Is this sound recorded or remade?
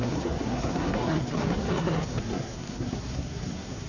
remade